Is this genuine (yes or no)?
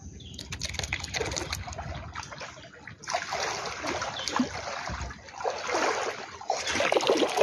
yes